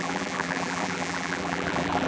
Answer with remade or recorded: remade